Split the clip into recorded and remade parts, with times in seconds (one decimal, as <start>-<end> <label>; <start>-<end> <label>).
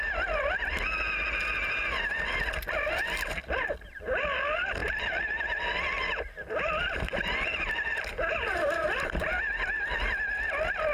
0.0-8.1 recorded; 8.1-9.4 remade; 9.4-10.9 recorded